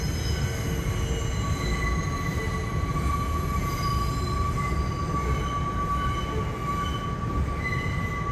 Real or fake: real